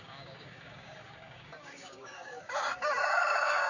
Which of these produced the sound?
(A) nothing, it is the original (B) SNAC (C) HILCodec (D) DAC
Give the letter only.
D